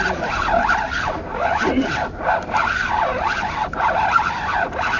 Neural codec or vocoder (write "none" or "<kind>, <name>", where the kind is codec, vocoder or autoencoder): vocoder, BigVGAN v2